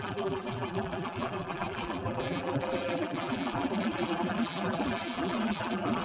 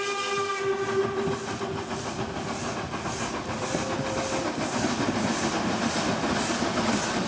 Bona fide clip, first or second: second